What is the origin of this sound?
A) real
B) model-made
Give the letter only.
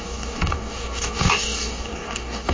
B